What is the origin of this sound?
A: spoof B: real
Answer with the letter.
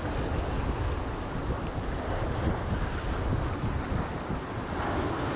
B